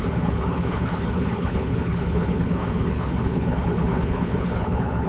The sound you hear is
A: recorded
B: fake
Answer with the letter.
B